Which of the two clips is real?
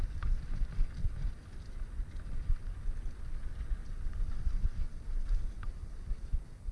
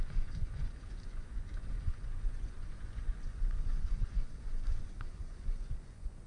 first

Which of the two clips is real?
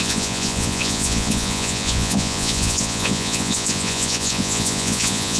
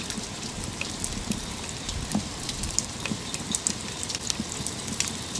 second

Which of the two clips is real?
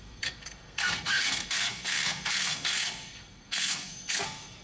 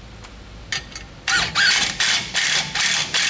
second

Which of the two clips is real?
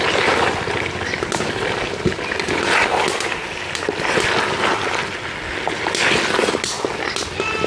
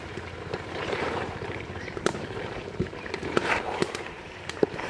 first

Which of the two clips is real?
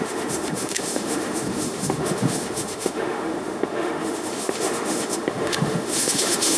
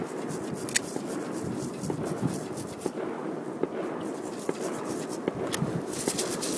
second